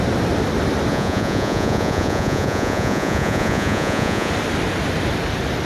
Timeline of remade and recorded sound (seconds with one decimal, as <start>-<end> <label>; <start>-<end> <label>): 0.0-0.9 recorded; 0.9-4.3 remade; 4.3-5.7 recorded